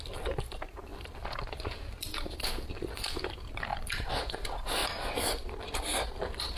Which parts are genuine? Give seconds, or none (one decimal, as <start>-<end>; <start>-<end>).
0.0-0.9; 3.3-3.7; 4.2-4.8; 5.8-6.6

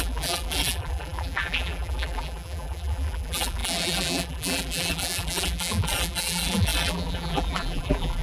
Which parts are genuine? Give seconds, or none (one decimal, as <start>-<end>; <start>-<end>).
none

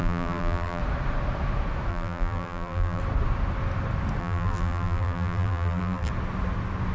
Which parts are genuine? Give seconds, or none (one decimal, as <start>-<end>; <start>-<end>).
0.8-1.9; 3.0-4.2; 6.1-6.9